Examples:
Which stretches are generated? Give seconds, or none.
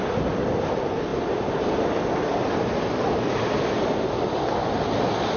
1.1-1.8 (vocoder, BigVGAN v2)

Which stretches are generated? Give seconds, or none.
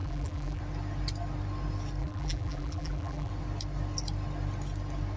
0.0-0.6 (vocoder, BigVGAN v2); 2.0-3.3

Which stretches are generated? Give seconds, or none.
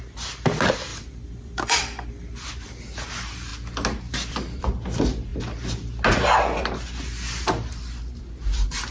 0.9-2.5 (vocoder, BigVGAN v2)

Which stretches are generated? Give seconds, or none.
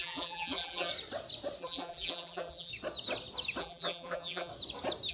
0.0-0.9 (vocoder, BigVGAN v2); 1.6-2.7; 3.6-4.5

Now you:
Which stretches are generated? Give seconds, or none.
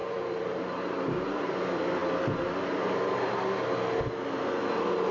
0.0-1.5 (vocoder, BigVGAN v2)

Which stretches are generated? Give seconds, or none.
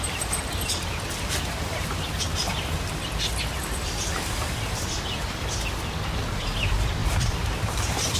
0.0-2.4 (vocoder, BigVGAN v2); 6.3-8.2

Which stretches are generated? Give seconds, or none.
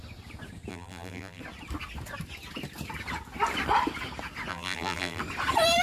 0.7-1.4 (vocoder, BigVGAN v2); 4.5-5.2